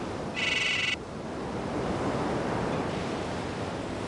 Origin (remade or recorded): recorded